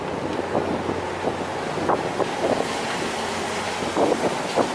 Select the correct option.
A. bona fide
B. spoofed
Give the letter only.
A